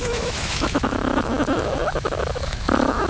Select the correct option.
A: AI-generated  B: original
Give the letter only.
A